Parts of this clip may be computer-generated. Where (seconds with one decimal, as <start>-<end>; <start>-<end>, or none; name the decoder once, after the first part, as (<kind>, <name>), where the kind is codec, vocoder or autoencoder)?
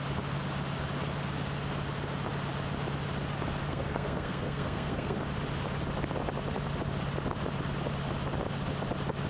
3.7-5.2 (codec, SNAC)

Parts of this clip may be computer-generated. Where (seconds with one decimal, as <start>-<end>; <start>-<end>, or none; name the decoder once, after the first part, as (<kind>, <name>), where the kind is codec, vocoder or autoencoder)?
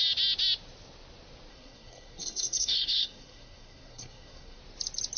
1.5-4.6 (codec, SNAC)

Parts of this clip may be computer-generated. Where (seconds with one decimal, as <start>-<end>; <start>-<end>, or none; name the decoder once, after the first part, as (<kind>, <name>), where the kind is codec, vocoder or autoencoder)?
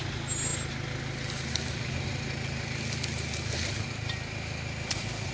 none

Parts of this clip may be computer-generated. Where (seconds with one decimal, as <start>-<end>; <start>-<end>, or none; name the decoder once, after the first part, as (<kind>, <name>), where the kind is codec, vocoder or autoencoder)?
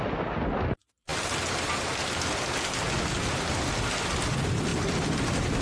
none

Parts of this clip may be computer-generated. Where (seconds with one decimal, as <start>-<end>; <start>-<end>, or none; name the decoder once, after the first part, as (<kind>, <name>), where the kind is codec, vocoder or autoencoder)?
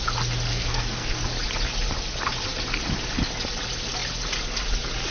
0.5-1.2 (codec, SNAC)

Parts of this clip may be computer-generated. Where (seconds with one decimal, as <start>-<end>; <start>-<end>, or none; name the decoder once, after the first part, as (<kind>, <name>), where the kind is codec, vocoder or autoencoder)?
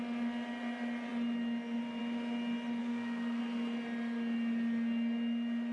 2.8-3.4 (codec, SNAC)